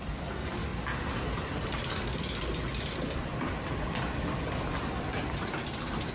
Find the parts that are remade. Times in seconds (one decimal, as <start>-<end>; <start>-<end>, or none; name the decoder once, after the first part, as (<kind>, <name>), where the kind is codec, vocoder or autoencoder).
none